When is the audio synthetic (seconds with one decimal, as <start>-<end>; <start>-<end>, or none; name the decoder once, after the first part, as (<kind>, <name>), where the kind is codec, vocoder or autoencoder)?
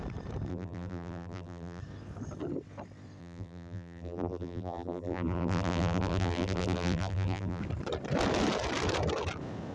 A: 0.5-1.8 (vocoder, BigVGAN v2); 3.2-7.6